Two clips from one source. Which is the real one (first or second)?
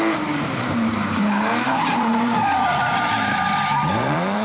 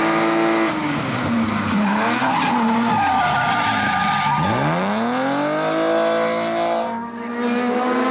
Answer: second